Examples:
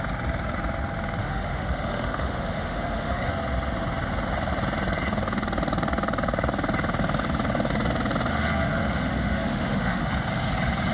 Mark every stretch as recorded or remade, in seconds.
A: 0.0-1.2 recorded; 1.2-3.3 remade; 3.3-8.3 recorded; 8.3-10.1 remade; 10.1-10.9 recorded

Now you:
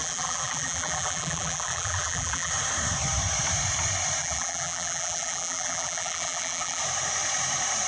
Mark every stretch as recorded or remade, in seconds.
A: 0.0-2.5 remade; 2.5-4.2 recorded; 4.2-6.8 remade; 6.8-7.9 recorded